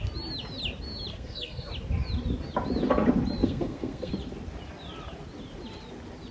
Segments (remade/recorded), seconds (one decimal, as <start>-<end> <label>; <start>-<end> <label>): 0.0-1.1 recorded; 1.1-1.7 remade; 1.7-3.4 recorded; 3.4-4.1 remade; 4.1-6.3 recorded